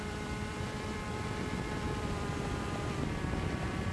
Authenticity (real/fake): fake